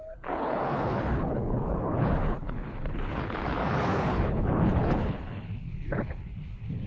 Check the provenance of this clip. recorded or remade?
remade